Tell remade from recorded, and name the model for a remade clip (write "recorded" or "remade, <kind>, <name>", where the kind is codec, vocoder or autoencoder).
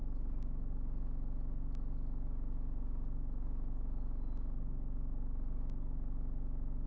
recorded